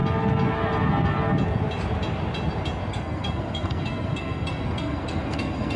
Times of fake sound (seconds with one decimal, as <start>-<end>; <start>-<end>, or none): 2.9-5.8